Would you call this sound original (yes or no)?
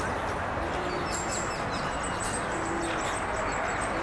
yes